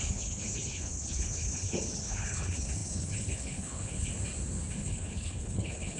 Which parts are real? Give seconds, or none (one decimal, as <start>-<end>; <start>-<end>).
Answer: 4.1-4.7